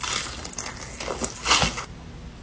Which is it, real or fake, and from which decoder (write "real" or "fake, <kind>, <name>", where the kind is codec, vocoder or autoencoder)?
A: real